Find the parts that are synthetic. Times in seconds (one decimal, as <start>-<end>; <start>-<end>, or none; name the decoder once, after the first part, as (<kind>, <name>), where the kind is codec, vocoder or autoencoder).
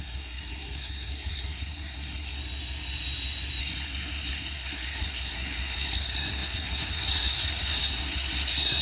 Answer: 0.0-2.4 (codec, SNAC); 3.6-8.8